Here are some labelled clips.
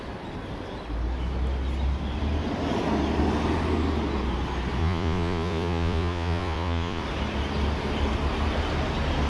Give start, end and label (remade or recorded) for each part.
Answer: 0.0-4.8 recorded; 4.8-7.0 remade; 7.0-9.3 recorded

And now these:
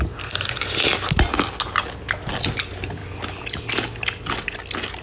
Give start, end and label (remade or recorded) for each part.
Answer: 0.0-5.0 recorded

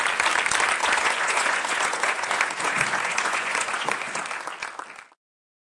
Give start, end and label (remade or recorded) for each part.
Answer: 0.0-0.8 recorded; 0.8-4.2 remade; 4.2-5.6 recorded

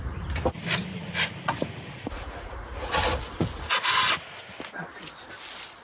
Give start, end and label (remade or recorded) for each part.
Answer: 0.0-0.9 recorded; 0.9-3.7 remade; 3.7-5.8 recorded

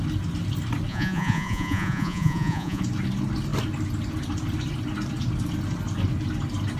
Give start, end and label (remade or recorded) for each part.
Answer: 0.0-0.9 recorded; 0.9-2.8 remade; 2.8-6.8 recorded

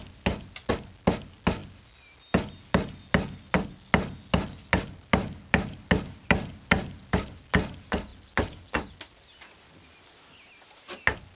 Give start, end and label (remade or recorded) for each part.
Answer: 0.0-11.3 recorded

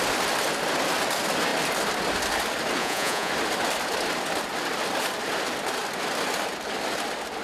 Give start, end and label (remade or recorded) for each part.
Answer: 0.0-2.8 recorded; 2.8-3.3 remade; 3.3-7.4 recorded

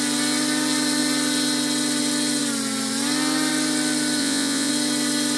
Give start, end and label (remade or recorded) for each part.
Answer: 0.0-4.2 recorded; 4.2-4.7 remade; 4.7-5.4 recorded